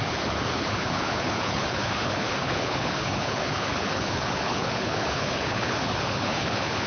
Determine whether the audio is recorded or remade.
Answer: remade